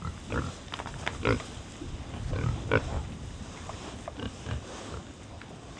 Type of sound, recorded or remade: recorded